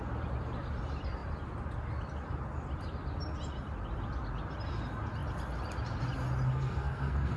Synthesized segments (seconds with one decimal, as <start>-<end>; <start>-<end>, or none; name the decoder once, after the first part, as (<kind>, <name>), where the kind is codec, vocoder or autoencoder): 6.5-7.4 (codec, SNAC)